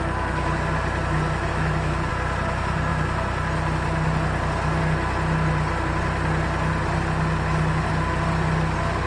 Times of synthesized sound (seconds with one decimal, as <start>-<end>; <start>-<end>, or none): 1.5-2.1